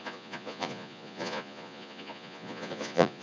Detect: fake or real fake